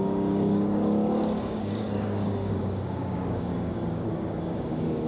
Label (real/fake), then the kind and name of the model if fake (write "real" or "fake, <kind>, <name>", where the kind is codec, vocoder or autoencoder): fake, codec, DAC